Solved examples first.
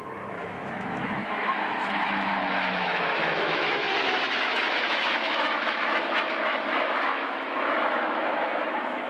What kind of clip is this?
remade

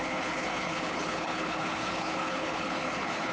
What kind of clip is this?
remade